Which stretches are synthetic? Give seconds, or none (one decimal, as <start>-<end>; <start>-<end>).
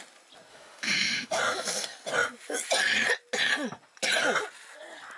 0.5-1.4